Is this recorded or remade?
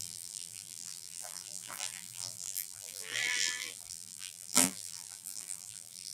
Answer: remade